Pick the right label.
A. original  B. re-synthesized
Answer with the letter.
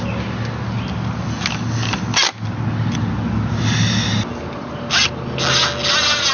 A